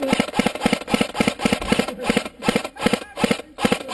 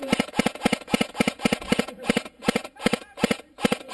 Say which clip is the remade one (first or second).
second